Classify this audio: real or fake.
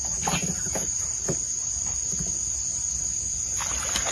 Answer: real